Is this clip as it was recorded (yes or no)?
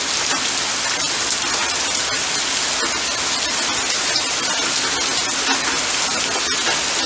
yes